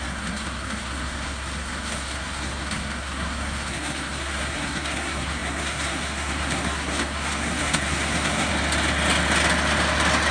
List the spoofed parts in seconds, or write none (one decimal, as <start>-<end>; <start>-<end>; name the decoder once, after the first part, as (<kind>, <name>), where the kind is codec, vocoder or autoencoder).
0.0-8.5 (codec, SNAC)